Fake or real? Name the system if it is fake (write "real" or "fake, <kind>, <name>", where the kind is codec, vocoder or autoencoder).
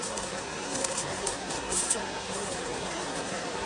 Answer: fake, codec, SNAC